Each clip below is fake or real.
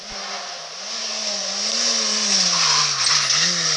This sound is real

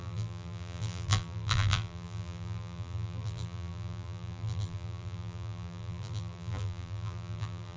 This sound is fake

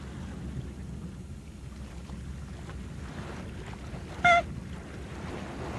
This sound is real